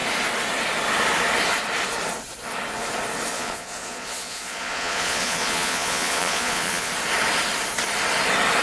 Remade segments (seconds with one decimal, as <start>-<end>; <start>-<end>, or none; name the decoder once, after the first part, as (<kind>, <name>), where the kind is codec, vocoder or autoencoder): 3.3-6.9 (vocoder, Vocos)

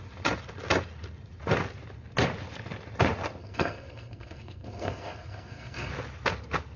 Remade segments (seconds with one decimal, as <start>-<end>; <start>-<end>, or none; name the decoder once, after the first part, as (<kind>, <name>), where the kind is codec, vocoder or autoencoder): 3.4-5.9 (codec, SNAC)